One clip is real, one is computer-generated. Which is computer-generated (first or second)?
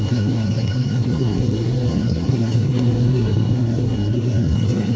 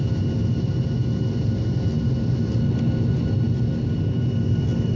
first